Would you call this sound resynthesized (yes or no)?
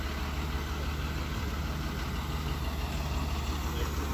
no